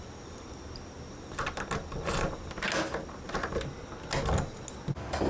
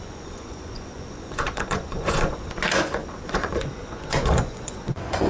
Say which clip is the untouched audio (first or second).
first